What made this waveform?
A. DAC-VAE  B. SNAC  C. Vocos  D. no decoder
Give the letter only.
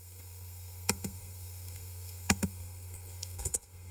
B